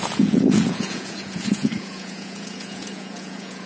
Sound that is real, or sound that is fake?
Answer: fake